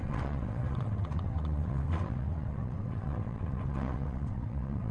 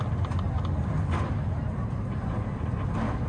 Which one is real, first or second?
second